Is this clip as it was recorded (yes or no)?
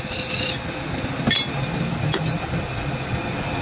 yes